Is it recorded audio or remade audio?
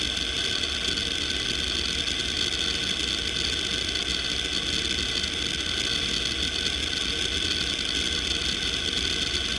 recorded